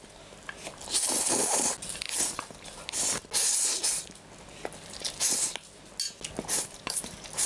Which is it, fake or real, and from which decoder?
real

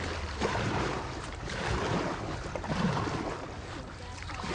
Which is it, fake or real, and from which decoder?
real